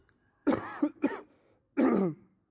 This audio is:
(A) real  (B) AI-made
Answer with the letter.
A